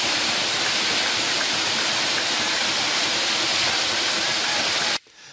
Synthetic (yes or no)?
no